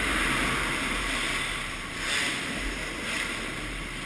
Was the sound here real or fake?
real